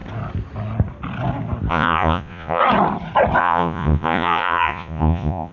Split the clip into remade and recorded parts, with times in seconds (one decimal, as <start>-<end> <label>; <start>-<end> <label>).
0.0-1.7 recorded; 1.7-2.6 remade; 2.6-3.4 recorded; 3.4-5.5 remade